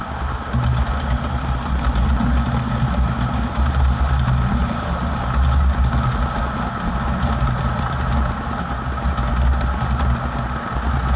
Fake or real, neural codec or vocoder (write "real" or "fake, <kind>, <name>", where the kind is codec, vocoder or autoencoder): real